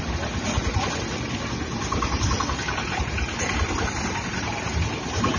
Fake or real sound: real